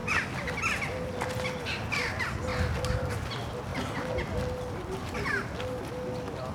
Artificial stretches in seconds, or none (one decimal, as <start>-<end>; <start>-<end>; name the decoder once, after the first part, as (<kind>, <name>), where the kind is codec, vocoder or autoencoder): none